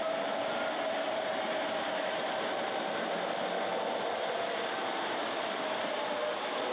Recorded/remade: recorded